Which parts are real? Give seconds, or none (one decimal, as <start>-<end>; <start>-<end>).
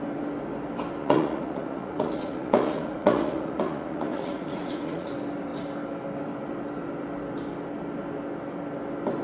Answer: 0.0-1.0; 5.1-9.2